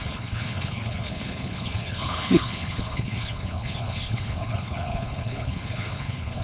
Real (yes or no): no